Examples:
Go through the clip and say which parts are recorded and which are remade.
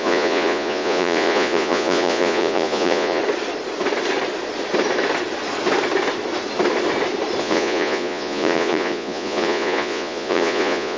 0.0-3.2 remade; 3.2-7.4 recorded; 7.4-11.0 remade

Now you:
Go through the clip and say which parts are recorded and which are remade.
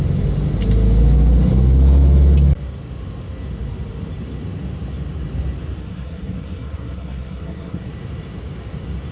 0.0-5.8 recorded; 5.8-7.9 remade; 7.9-9.1 recorded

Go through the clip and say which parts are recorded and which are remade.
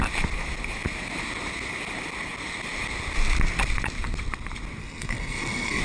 0.0-4.8 recorded; 4.8-5.8 remade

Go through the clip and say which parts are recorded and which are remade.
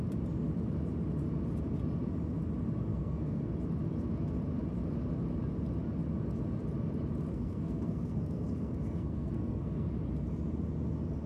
0.0-2.9 recorded; 2.9-3.5 remade; 3.5-7.3 recorded; 7.3-9.9 remade; 9.9-11.3 recorded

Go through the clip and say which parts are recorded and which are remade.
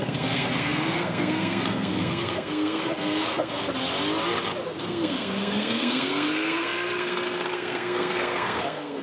0.0-3.6 remade; 3.6-4.8 recorded; 4.8-9.0 remade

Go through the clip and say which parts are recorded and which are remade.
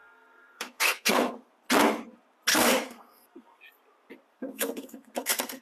0.0-1.5 remade; 1.5-2.5 recorded; 2.5-3.6 remade; 3.6-4.3 recorded; 4.3-5.6 remade